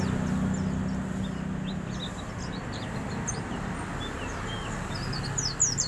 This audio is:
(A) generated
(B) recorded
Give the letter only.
B